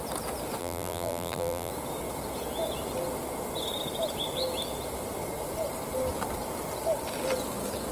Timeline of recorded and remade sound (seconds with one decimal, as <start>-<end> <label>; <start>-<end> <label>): 0.0-0.6 recorded; 0.6-1.7 remade; 1.7-7.9 recorded